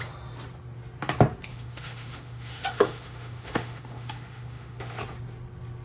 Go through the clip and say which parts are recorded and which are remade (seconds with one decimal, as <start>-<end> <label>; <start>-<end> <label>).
0.0-1.5 recorded; 1.5-5.0 remade; 5.0-5.8 recorded